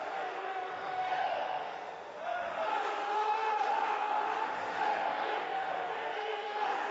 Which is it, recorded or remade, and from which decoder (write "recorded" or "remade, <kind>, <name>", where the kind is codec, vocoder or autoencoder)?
remade, autoencoder, DAC-VAE